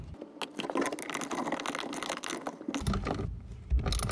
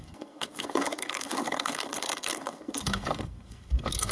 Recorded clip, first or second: first